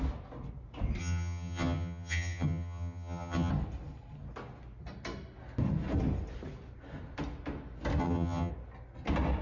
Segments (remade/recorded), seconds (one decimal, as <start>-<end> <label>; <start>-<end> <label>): 0.0-1.0 recorded; 1.0-3.5 remade; 3.5-8.0 recorded; 8.0-8.5 remade; 8.5-9.4 recorded